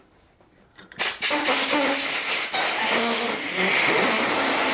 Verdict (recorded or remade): recorded